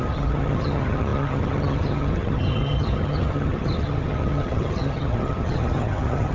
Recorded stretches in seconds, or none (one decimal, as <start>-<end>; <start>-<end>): none

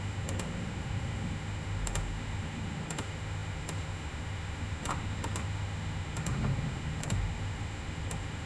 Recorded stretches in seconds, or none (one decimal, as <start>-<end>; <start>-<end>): none

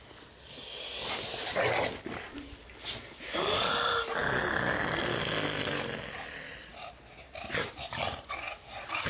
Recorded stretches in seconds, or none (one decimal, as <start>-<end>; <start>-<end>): 0.0-9.1

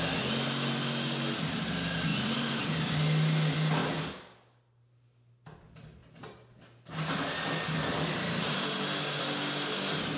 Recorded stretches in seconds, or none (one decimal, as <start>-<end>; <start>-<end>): 0.0-2.1; 2.6-10.2

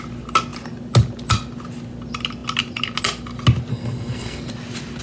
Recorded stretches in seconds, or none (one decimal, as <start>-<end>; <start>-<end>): 0.0-3.7; 4.4-5.0

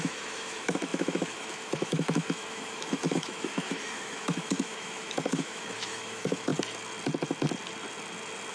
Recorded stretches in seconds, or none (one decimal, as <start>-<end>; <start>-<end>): 6.5-8.5

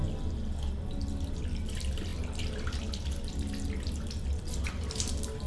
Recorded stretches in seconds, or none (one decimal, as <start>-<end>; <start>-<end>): 0.0-5.5

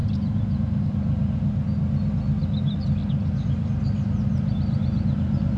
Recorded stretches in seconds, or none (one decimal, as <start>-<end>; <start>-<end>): 0.0-5.6